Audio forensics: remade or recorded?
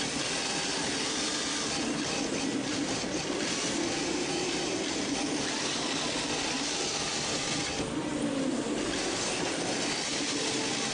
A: recorded